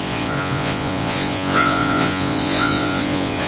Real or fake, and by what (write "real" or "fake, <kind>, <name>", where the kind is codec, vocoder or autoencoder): fake, vocoder, Vocos